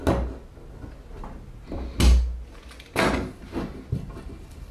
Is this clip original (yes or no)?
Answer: yes